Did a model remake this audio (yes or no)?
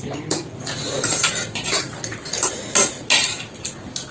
no